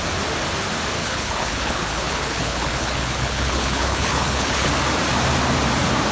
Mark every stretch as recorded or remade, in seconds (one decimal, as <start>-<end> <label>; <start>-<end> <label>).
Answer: 0.0-1.0 recorded; 1.0-4.7 remade; 4.7-6.1 recorded